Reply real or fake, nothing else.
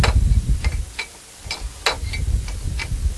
real